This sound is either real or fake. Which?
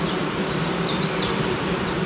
real